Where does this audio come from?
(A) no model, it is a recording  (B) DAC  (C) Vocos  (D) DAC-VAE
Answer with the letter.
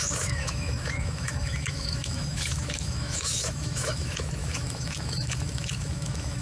D